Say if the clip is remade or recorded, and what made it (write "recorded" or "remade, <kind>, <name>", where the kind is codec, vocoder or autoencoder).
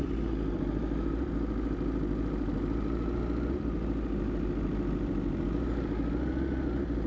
recorded